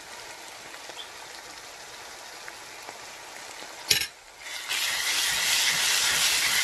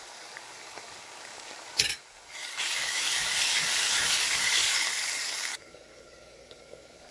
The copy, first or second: second